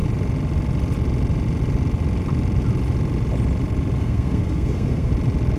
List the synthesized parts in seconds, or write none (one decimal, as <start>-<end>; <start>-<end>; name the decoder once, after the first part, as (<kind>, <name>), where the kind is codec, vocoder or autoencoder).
4.0-5.1 (codec, SNAC)